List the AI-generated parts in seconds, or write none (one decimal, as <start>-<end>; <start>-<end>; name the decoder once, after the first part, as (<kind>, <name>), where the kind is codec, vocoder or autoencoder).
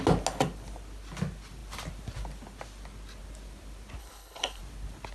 4.0-4.6 (codec, HILCodec)